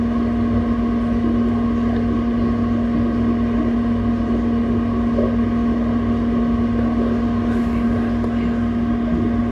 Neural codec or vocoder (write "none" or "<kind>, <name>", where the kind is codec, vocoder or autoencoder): none